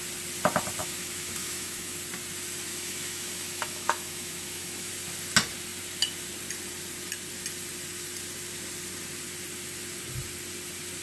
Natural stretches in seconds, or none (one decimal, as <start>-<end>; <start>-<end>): 0.0-0.8; 2.0-2.7; 4.9-11.0